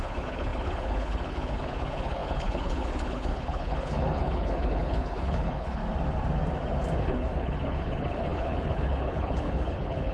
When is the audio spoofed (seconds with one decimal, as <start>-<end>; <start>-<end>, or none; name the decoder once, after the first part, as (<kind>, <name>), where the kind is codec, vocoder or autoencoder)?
0.0-5.8 (codec, HILCodec); 7.0-10.1

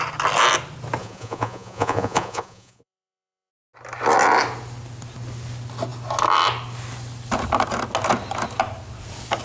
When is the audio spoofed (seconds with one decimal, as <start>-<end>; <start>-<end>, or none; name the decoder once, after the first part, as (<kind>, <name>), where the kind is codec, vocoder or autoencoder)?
1.0-3.5 (vocoder, Vocos)

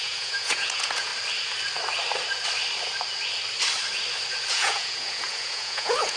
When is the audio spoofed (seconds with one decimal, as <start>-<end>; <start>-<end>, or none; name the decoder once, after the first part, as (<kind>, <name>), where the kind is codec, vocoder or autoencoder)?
0.0-1.1 (vocoder, Vocos); 4.5-6.2

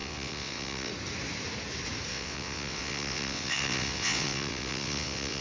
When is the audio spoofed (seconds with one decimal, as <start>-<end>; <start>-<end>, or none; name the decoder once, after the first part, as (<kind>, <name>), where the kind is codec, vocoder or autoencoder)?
0.0-0.9 (vocoder, WaveNeXt); 2.1-5.4